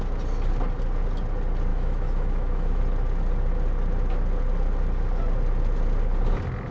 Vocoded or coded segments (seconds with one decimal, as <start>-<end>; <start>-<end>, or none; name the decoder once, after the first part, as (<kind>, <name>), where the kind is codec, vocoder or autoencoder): 1.7-2.8 (autoencoder, DAC-VAE)